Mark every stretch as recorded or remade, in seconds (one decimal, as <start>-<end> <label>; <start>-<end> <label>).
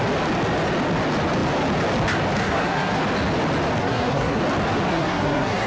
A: 0.0-2.4 recorded; 2.4-3.0 remade; 3.0-3.8 recorded; 3.8-4.4 remade; 4.4-4.9 recorded; 4.9-5.7 remade